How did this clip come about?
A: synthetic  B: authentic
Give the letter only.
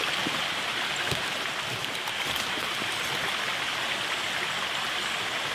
B